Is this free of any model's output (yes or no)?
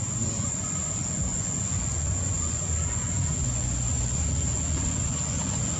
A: no